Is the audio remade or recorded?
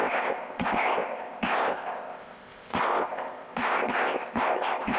remade